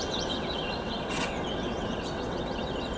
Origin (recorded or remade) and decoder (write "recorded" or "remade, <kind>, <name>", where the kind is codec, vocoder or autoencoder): remade, vocoder, WaveNeXt